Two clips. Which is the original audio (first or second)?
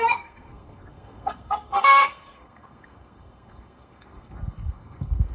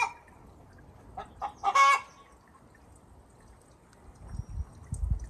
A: second